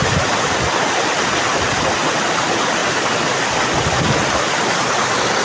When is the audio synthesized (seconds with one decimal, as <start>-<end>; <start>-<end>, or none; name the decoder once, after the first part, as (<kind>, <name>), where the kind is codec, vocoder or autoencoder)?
0.0-1.0 (vocoder, BigVGAN v2); 1.5-2.0; 2.8-5.4